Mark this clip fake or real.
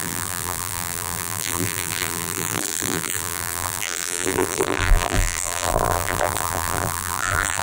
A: fake